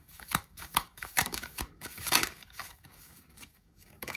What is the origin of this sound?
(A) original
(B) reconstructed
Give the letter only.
B